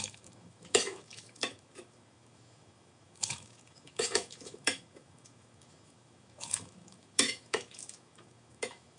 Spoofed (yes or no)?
yes